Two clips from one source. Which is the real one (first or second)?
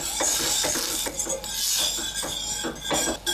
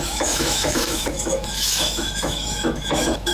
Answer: first